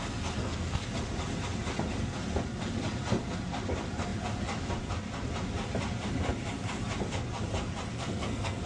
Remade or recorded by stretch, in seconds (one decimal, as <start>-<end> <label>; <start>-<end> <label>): 0.0-0.4 recorded; 0.4-0.9 remade; 0.9-7.9 recorded; 7.9-8.7 remade